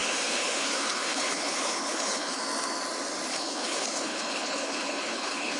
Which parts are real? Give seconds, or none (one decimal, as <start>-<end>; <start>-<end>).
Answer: 2.4-3.3